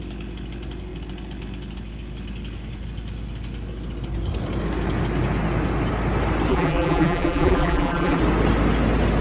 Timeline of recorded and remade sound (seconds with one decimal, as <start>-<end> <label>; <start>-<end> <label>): 0.0-6.5 recorded; 6.5-8.2 remade; 8.2-9.2 recorded